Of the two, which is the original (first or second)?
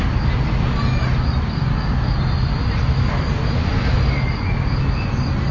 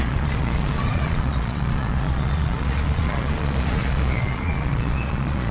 first